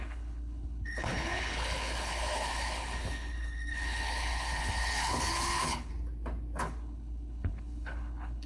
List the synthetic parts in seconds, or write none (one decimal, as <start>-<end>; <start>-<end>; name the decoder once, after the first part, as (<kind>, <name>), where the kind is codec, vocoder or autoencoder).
0.0-5.9 (codec, HILCodec); 6.6-8.5